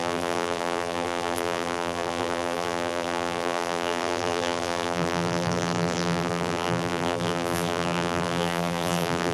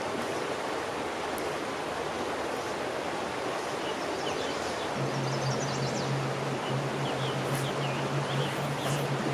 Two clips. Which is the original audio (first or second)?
second